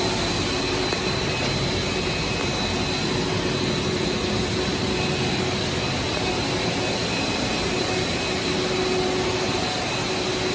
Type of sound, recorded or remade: recorded